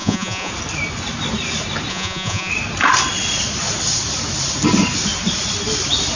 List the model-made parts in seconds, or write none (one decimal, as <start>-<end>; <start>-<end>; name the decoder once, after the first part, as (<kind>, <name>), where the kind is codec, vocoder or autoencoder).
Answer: 0.0-0.5 (vocoder, Vocos); 1.9-2.5

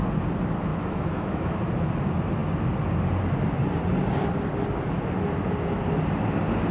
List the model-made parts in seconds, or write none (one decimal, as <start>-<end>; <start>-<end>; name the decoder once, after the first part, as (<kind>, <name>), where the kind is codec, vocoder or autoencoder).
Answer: 0.7-1.6 (autoencoder, DAC-VAE)

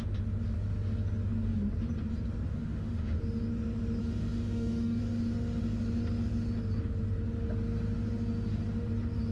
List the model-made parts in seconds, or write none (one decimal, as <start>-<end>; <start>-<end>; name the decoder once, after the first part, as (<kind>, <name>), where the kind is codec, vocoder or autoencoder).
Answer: 2.5-3.2 (autoencoder, DAC-VAE); 4.0-5.0

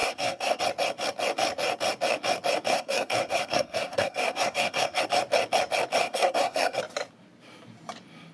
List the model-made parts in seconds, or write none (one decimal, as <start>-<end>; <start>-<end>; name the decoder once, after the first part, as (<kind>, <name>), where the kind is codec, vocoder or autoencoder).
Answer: 0.0-0.6 (codec, SNAC); 2.7-5.0; 6.0-6.8

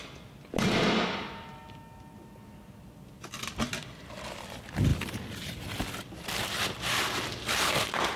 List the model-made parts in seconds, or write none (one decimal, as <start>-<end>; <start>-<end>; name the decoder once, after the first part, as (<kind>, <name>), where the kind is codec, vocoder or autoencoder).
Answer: 4.9-7.7 (vocoder, BigVGAN v2)

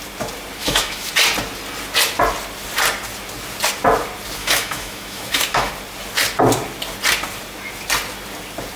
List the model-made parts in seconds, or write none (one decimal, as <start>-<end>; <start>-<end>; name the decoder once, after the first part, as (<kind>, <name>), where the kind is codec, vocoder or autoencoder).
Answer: 0.6-1.1 (autoencoder, DAC-VAE); 4.4-5.7